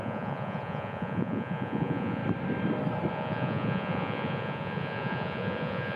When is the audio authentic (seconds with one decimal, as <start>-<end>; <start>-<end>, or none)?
2.2-3.1